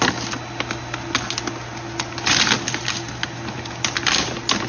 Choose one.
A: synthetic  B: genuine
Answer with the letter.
B